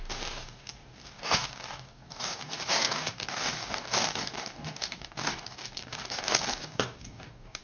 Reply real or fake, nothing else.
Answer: fake